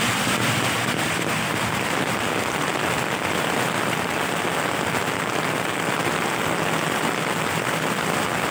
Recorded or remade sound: recorded